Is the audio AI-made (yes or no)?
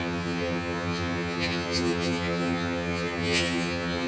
yes